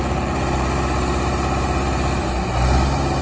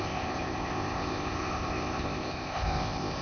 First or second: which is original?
first